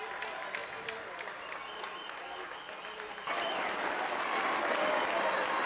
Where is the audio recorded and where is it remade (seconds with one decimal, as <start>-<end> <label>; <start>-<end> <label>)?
0.0-5.7 recorded